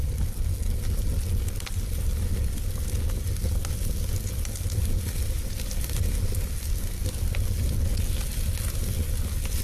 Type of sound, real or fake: real